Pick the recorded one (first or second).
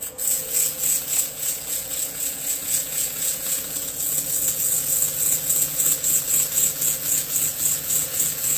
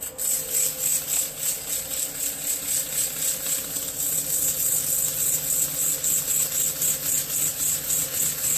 second